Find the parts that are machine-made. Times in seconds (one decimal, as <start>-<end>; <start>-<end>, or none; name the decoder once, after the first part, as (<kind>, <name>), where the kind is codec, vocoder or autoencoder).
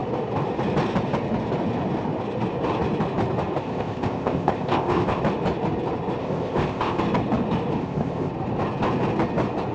3.6-5.2 (codec, ZipCodec); 6.2-7.0; 7.8-8.3